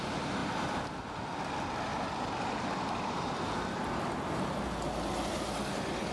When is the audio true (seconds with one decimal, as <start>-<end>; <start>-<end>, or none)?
0.0-6.1